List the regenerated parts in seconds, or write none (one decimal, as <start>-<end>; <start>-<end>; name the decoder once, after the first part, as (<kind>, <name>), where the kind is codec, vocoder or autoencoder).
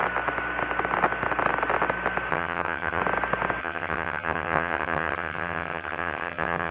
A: 2.3-3.0 (vocoder, HiFi-GAN); 3.6-6.7